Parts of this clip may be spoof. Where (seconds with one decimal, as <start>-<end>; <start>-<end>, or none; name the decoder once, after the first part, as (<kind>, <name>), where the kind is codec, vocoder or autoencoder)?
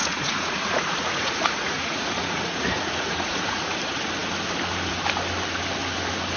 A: 0.0-3.8 (vocoder, Vocos)